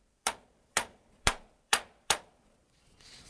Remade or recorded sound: remade